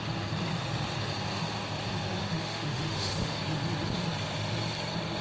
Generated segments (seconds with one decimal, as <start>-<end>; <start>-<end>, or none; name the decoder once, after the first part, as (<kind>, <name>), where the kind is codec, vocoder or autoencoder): 2.2-3.4 (autoencoder, DAC-VAE)